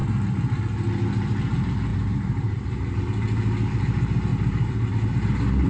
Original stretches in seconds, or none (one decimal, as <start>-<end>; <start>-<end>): 0.0-1.9; 3.0-4.3; 4.9-5.7